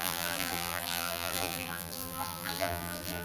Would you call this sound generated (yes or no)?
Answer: yes